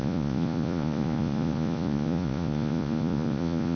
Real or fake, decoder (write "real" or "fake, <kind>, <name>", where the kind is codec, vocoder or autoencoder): fake, vocoder, Vocos